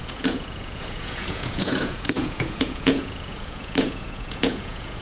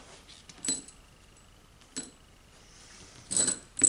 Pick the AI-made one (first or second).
first